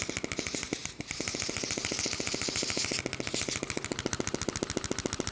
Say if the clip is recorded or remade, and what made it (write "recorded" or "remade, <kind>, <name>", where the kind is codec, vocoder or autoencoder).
recorded